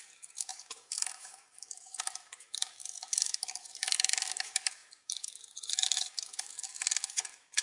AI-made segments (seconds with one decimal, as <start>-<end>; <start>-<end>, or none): 0.0-7.6